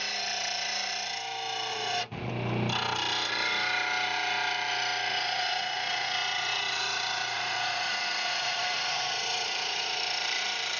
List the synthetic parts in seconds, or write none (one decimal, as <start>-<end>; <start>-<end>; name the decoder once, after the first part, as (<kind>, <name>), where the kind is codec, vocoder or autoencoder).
1.7-2.3 (vocoder, Vocos); 5.1-10.0